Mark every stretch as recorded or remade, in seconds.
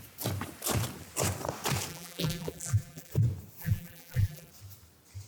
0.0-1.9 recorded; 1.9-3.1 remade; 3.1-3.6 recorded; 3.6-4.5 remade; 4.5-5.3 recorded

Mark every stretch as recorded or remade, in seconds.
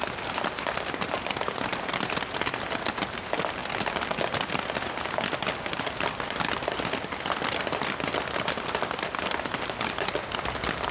0.0-10.9 recorded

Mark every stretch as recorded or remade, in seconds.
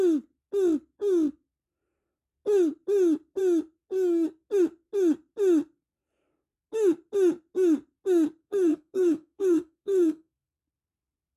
0.0-8.4 recorded; 8.4-10.6 remade; 10.6-11.4 recorded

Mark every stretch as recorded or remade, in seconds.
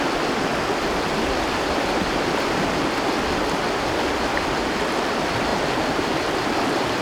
0.0-7.0 recorded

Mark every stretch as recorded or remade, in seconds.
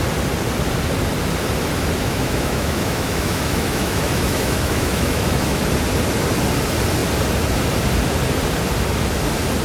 0.0-2.0 recorded; 2.0-5.6 remade; 5.6-9.6 recorded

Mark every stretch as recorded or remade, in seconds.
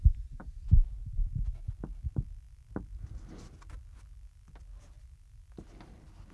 0.0-6.3 recorded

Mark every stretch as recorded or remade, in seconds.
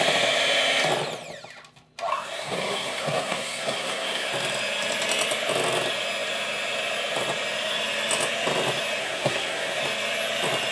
0.0-2.1 recorded; 2.1-4.3 remade; 4.3-9.0 recorded; 9.0-9.8 remade; 9.8-10.7 recorded